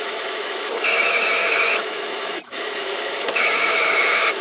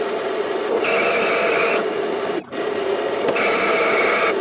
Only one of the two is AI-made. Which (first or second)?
first